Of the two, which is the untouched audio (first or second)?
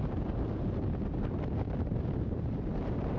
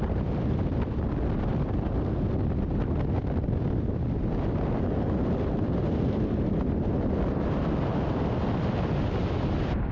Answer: second